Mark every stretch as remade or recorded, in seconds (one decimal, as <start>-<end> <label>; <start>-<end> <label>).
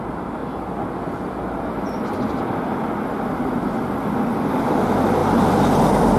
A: 0.0-0.4 remade; 0.4-3.3 recorded; 3.3-6.2 remade